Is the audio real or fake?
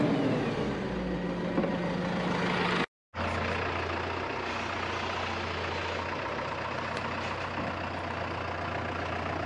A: real